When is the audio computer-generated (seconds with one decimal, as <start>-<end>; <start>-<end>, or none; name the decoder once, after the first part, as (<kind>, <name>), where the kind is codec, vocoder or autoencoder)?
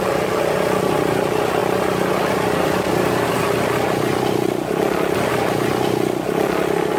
none